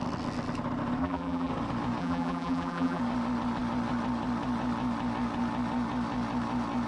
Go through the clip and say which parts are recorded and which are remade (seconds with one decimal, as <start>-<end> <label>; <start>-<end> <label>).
0.0-1.0 recorded; 1.0-1.5 remade; 1.5-2.0 recorded; 2.0-3.0 remade; 3.0-6.9 recorded